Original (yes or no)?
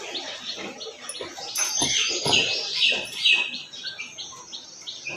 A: yes